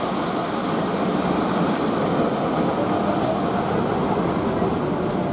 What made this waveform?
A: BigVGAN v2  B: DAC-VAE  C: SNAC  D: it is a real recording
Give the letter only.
D